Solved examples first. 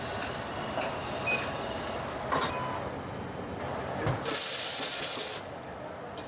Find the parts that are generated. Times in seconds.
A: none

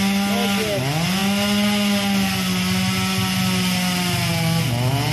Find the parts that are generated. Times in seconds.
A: none

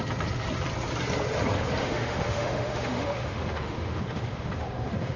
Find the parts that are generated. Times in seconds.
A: 1.8-5.2

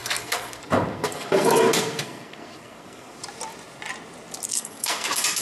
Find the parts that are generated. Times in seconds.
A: 0.0-3.2; 4.5-5.4

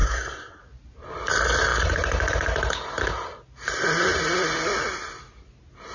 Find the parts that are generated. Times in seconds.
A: 0.0-0.6

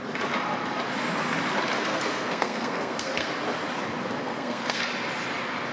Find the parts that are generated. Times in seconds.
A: 1.9-3.3; 4.2-4.8

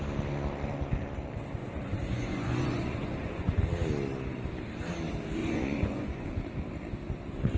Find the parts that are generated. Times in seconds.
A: 1.6-3.6; 5.4-6.3

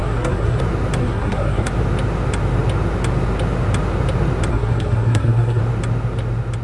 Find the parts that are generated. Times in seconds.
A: 0.0-0.6; 1.0-1.7; 4.5-5.6